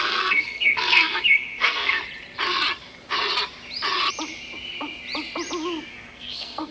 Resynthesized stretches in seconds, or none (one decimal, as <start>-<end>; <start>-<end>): 0.0-2.0; 5.9-6.7